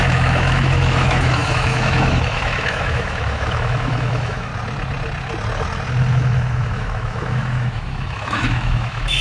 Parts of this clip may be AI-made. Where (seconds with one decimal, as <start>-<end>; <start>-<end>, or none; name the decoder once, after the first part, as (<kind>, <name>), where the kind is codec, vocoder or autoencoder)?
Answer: 0.0-4.5 (autoencoder, DAC-VAE); 6.1-9.2